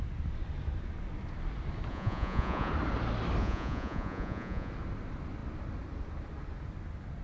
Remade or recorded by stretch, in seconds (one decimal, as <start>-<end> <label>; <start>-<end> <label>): 0.0-1.9 recorded; 1.9-2.7 remade; 2.7-3.4 recorded; 3.4-4.7 remade; 4.7-7.2 recorded